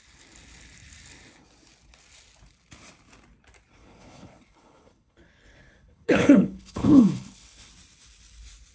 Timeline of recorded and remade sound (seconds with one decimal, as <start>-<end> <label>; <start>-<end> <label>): 0.0-3.7 recorded; 3.7-7.7 remade; 7.7-8.7 recorded